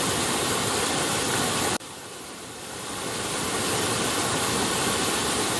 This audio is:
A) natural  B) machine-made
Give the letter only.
A